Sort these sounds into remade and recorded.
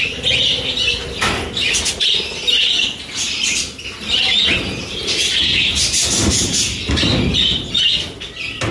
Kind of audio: recorded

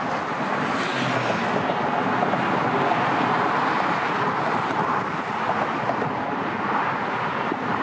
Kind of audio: recorded